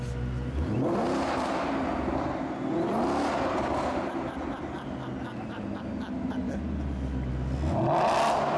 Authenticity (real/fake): real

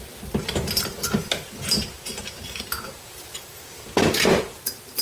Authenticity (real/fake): real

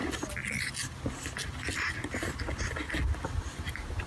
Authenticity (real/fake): real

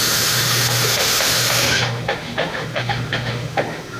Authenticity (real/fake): fake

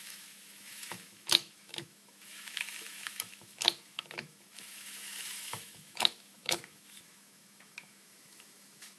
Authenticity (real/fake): fake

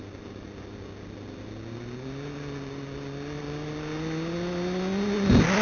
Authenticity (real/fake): real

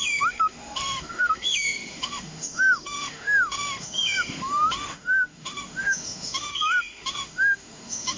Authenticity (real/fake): fake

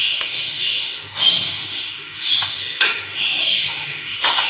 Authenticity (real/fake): fake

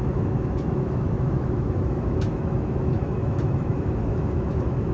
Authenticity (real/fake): fake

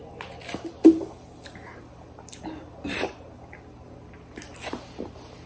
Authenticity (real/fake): real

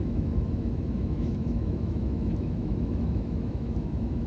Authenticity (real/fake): fake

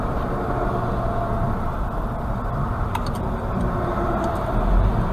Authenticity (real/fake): real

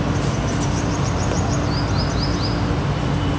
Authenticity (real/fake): real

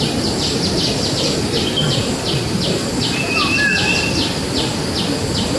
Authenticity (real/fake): real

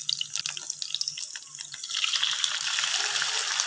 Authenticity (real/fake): real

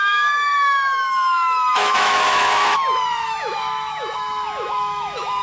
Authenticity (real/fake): fake